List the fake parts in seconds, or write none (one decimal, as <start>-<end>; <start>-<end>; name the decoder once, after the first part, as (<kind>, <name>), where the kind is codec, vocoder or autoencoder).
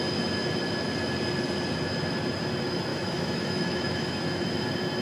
2.9-4.4 (autoencoder, DAC-VAE)